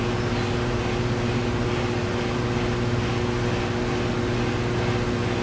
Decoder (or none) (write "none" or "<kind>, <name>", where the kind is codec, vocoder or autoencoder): none